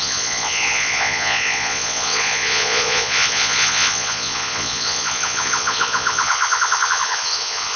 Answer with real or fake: fake